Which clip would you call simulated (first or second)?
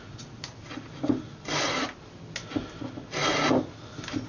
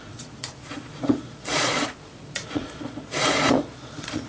second